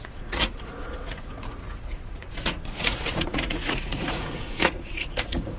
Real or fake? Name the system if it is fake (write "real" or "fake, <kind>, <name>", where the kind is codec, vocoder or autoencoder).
fake, vocoder, Vocos